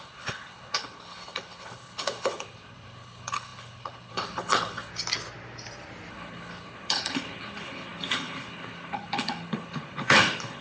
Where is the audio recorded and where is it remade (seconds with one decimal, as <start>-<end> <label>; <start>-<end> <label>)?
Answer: 0.0-4.9 remade; 4.9-6.1 recorded; 6.1-10.6 remade